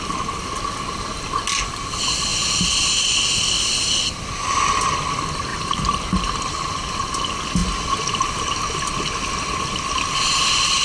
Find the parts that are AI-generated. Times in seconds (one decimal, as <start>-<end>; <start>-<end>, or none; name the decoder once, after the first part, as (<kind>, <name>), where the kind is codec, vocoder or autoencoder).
2.3-2.9 (vocoder, BigVGAN v2); 5.5-6.6